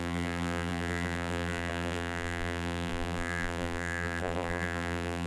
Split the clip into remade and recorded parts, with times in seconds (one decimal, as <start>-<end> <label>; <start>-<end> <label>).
0.0-5.3 remade